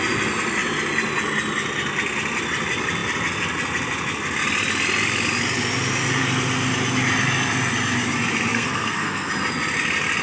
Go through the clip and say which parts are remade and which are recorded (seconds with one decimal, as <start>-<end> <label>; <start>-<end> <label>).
0.0-8.5 recorded; 8.5-9.3 remade; 9.3-10.2 recorded